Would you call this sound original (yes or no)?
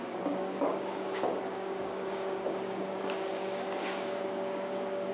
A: no